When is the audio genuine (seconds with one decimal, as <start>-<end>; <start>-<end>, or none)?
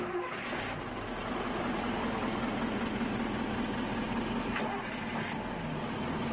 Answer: 0.0-6.3